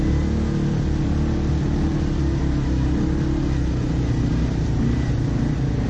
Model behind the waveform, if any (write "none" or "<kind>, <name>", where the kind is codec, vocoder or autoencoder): none